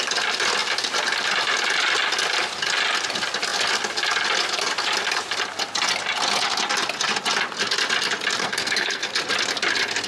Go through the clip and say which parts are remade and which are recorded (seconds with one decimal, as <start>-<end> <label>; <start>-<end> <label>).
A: 0.0-8.4 recorded; 8.4-9.1 remade; 9.1-10.1 recorded